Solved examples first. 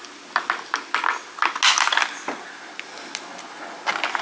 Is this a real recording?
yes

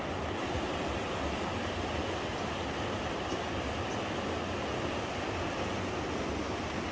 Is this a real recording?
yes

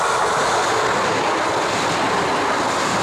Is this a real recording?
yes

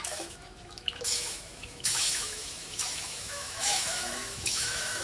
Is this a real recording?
no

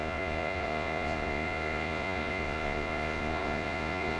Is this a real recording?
no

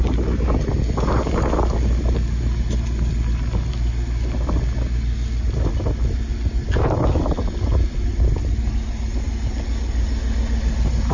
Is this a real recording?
yes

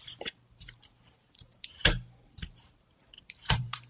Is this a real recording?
no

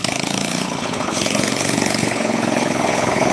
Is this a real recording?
no